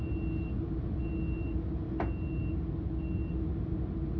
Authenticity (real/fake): real